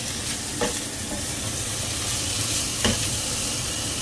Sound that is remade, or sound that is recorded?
recorded